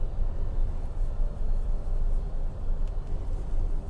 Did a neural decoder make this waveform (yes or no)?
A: no